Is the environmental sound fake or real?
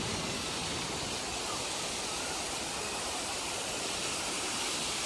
fake